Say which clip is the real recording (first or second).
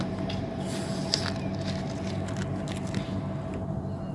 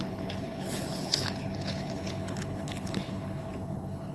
first